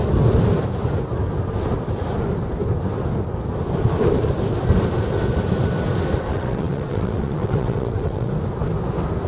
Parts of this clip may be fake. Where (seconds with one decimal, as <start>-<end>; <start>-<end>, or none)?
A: 6.3-8.3